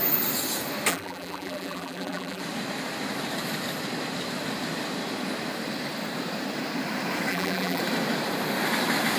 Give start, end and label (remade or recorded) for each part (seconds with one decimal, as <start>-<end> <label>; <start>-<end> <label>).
0.0-0.9 recorded; 0.9-2.4 remade; 2.4-7.3 recorded; 7.3-7.8 remade; 7.8-9.2 recorded